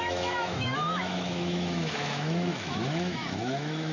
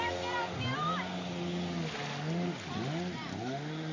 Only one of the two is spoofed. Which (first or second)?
first